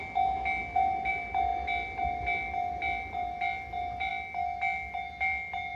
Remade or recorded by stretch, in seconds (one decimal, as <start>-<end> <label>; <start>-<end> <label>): 0.0-5.8 recorded